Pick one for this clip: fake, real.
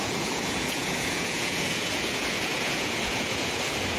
fake